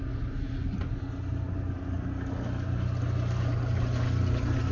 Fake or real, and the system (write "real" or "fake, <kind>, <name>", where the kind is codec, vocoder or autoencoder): real